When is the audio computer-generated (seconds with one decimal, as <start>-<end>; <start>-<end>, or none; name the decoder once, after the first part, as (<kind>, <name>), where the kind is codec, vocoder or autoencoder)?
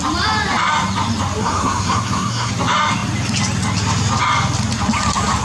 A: 1.4-2.5 (codec, SNAC)